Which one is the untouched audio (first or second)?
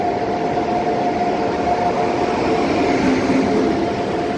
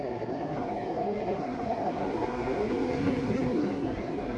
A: first